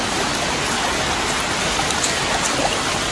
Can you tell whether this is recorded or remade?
recorded